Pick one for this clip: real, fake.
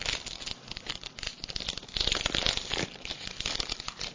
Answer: real